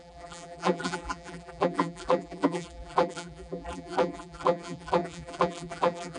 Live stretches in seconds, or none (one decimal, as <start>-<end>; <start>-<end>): none